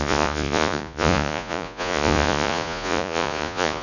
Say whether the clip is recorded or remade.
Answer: remade